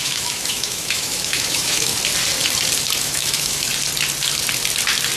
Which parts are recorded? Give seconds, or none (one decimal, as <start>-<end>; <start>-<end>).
1.9-3.0; 3.7-5.2